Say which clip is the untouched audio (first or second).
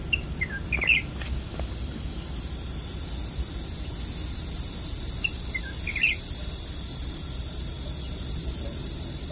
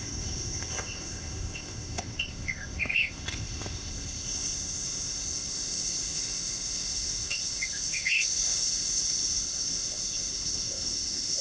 first